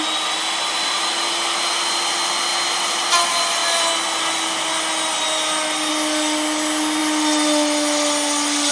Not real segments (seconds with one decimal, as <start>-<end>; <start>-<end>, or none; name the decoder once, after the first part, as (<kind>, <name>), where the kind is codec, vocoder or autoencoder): none